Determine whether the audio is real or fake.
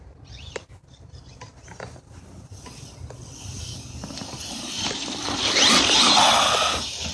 real